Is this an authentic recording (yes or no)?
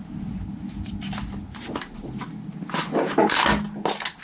yes